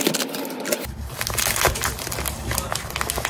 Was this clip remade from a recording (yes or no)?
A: no